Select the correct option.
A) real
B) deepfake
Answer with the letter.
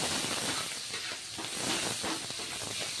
A